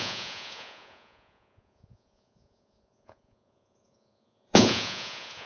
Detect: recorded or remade remade